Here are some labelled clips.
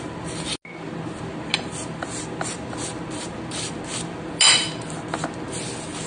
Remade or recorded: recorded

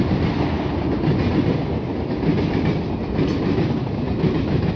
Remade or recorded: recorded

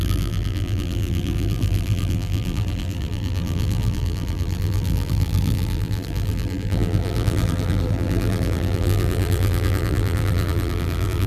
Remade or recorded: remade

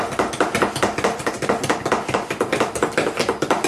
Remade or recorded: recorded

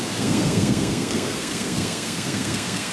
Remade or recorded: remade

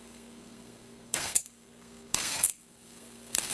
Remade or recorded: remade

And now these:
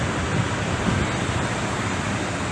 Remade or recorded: recorded